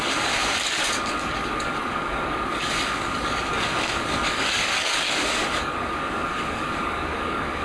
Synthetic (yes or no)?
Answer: yes